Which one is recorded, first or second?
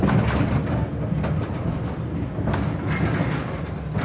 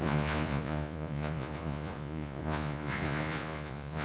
first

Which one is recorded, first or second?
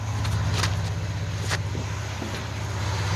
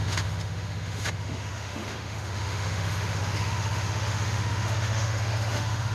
first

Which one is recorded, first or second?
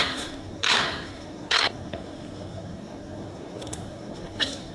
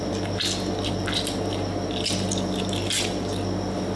second